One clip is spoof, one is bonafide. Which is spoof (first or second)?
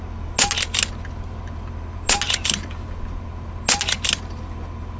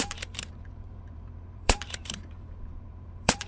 second